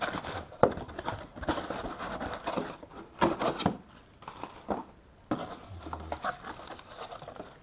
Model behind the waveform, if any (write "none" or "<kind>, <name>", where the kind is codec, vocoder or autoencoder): none